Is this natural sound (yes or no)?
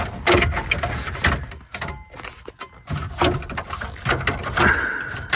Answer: yes